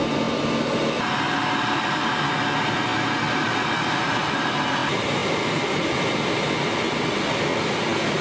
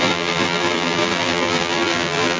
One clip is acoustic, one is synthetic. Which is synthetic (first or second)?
second